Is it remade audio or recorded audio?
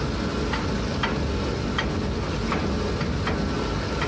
recorded